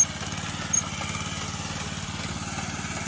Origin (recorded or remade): recorded